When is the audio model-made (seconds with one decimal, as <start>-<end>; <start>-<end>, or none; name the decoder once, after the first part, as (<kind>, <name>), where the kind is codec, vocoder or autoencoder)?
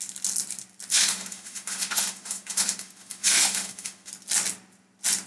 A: 0.9-4.1 (autoencoder, DAC-VAE)